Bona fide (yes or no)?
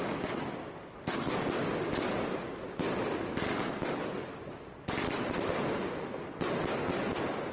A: yes